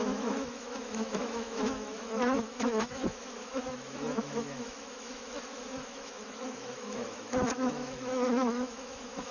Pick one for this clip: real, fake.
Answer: fake